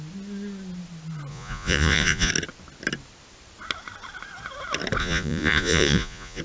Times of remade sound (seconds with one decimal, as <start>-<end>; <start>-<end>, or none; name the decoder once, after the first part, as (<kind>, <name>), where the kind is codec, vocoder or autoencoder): 1.3-2.3 (vocoder, Vocos); 5.0-6.4